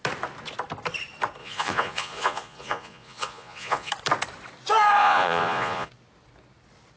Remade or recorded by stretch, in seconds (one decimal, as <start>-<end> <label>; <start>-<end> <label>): 0.0-1.4 recorded; 1.4-3.9 remade; 3.9-5.0 recorded; 5.0-5.9 remade; 5.9-7.0 recorded